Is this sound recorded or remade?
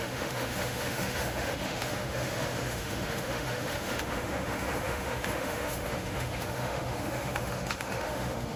remade